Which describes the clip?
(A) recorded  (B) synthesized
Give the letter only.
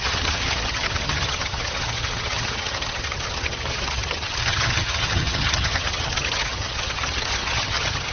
B